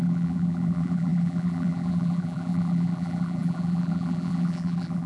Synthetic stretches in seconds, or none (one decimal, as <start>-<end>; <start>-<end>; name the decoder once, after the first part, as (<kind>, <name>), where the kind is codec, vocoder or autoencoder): 0.0-5.1 (vocoder, BigVGAN v2)